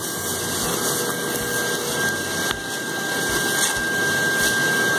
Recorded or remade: recorded